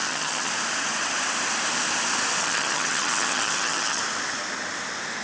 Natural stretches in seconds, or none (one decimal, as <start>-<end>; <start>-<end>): 0.5-2.4; 4.0-5.2